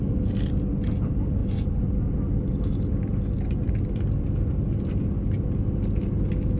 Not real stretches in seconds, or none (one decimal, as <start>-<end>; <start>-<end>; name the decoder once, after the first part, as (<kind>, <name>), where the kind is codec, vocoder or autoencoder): none